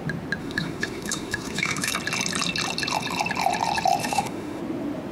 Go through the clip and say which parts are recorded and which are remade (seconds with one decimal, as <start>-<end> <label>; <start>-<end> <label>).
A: 0.0-0.4 recorded; 0.4-1.9 remade; 1.9-4.0 recorded; 4.0-4.6 remade; 4.6-5.1 recorded